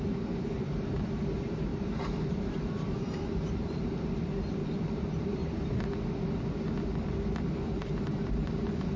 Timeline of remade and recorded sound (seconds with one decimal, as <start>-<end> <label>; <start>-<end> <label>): 0.0-5.4 remade; 5.4-7.7 recorded; 7.7-9.0 remade